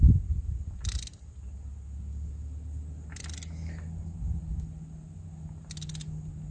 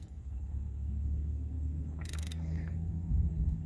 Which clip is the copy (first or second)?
second